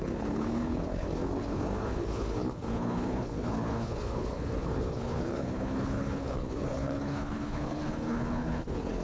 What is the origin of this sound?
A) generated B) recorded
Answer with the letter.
A